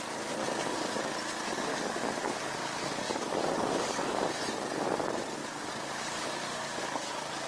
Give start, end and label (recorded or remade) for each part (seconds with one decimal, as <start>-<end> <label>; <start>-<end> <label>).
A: 0.0-0.4 recorded; 0.4-1.0 remade; 1.0-1.7 recorded; 1.7-4.2 remade; 4.2-5.4 recorded; 5.4-7.5 remade